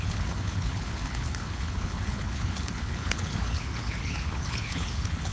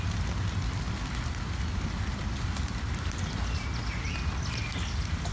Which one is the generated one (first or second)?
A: first